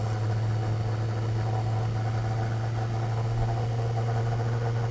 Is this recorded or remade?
recorded